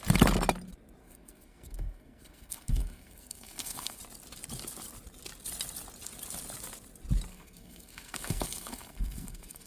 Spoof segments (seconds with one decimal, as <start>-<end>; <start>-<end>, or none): 1.0-4.0; 7.3-9.7